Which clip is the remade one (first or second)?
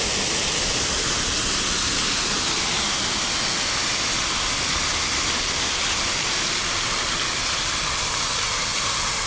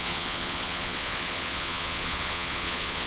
second